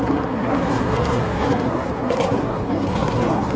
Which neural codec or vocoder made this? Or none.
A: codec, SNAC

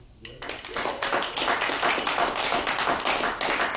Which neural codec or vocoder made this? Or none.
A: none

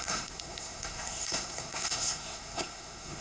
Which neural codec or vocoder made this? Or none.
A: codec, SNAC